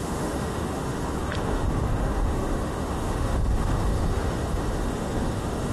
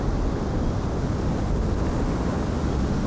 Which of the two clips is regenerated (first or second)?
first